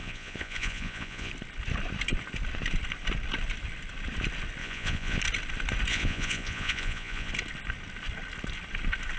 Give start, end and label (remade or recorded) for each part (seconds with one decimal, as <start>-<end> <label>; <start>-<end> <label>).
0.0-1.3 remade; 1.3-4.6 recorded; 4.6-5.2 remade; 5.2-5.9 recorded; 5.9-7.3 remade; 7.3-9.2 recorded